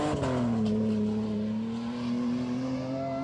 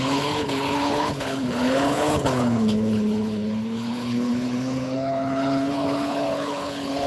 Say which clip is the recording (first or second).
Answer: first